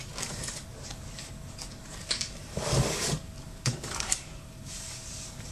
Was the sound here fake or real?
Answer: fake